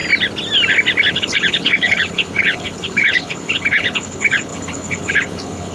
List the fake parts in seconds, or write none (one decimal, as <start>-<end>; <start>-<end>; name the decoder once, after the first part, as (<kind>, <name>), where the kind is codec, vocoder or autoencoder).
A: 1.1-5.7 (codec, HILCodec)